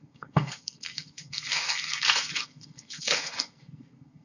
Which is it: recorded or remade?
remade